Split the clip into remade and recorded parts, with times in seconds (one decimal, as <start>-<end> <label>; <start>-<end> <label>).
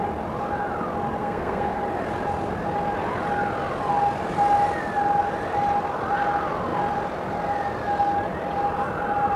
0.0-1.2 recorded; 1.2-1.8 remade; 1.8-9.4 recorded